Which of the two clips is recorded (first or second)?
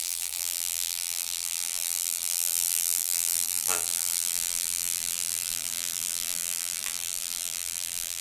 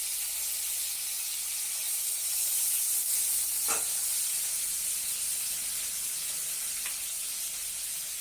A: second